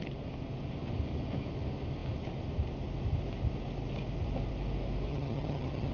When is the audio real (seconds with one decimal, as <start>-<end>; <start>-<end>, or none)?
0.0-5.1